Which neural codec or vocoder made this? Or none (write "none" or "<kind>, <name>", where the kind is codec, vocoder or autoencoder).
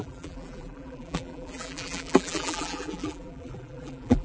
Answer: vocoder, BigVGAN v2